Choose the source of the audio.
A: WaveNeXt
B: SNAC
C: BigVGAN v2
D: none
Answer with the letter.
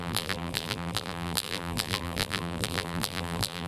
C